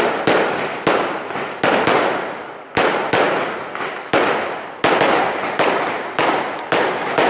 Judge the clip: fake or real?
real